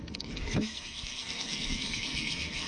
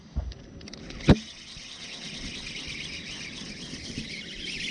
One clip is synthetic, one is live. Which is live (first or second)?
second